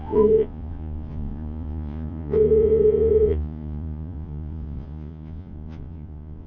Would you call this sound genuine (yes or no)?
no